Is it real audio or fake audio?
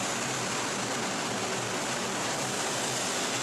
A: fake